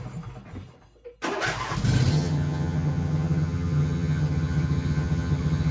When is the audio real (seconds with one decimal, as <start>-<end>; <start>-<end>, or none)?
0.0-2.1